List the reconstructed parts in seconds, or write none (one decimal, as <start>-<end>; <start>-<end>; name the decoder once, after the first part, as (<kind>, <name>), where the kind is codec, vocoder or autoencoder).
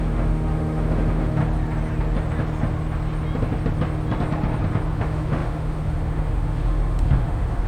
0.0-1.4 (autoencoder, DAC-VAE); 4.9-7.7